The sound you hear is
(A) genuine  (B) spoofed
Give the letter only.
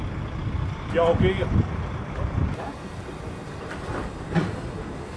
A